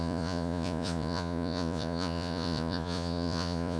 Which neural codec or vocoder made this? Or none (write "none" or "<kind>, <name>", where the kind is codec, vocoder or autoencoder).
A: vocoder, Vocos